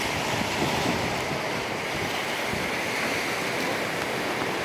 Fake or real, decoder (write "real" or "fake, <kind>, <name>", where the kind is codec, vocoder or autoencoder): real